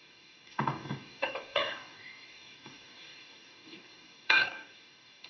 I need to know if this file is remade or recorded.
remade